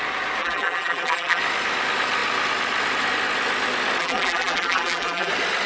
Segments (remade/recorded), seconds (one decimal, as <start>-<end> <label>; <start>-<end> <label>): 0.0-0.4 recorded; 0.4-1.4 remade; 1.4-4.0 recorded; 4.0-5.3 remade; 5.3-5.7 recorded